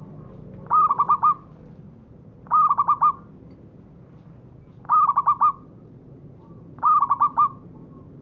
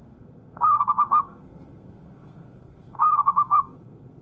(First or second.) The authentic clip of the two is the first